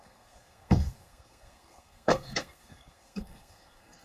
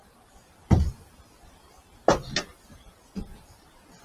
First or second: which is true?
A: second